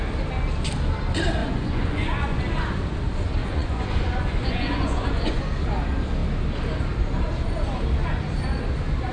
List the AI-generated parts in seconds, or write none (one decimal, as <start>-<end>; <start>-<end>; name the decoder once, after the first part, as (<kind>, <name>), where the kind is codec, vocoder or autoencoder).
1.4-2.4 (vocoder, Vocos); 3.4-5.4